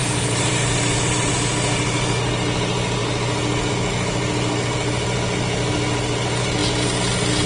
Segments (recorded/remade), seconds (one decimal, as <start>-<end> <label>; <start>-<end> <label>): 0.0-1.3 remade; 1.3-7.5 recorded